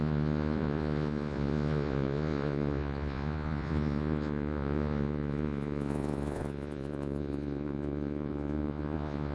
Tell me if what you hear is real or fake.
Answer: fake